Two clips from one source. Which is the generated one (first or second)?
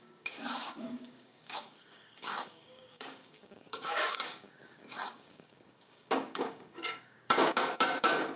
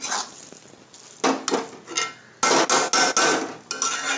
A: first